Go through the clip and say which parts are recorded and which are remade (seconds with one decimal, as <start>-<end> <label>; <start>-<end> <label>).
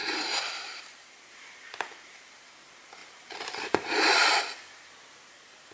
0.0-2.6 remade; 2.6-3.0 recorded; 3.0-4.1 remade; 4.1-5.7 recorded